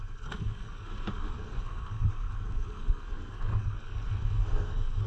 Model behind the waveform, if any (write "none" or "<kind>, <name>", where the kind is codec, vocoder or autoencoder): codec, SNAC